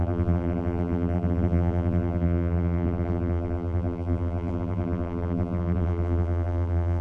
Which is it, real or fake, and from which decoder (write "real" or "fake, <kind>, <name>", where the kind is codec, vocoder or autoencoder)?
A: fake, vocoder, BigVGAN v2